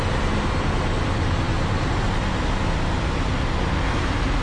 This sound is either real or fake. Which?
real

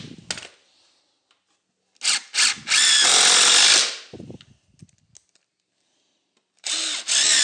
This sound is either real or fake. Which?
real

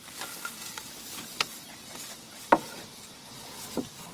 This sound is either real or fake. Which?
fake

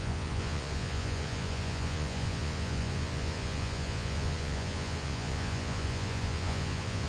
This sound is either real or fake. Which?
fake